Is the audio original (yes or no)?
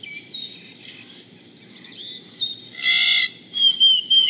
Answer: yes